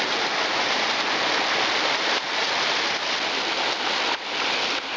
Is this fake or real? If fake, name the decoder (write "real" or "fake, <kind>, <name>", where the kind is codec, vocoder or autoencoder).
real